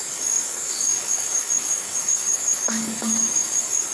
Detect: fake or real fake